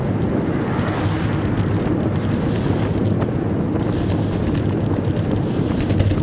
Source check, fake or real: real